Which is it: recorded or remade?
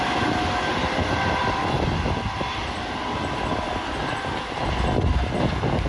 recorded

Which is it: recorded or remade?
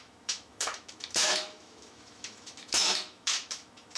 remade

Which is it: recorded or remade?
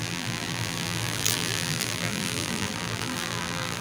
remade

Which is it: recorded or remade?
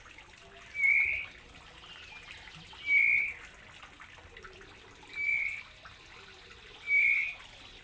recorded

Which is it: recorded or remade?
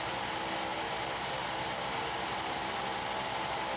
recorded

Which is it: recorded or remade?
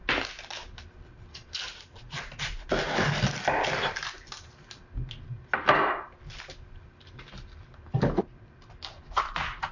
recorded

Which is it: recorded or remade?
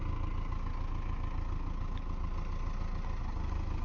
recorded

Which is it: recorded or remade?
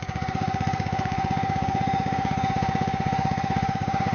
remade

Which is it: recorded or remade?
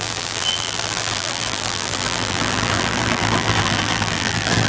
remade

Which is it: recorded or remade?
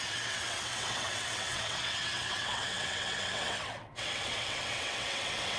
remade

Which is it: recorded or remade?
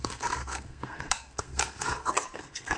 remade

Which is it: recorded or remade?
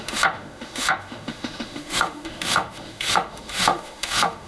remade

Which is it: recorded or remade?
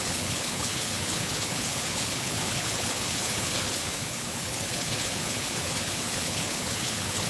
remade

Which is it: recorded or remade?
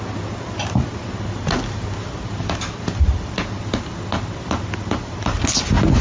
recorded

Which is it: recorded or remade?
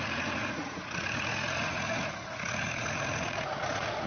remade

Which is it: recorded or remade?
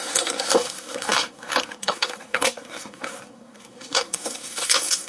remade